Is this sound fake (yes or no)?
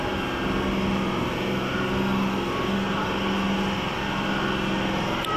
no